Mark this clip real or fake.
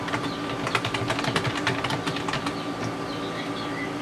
real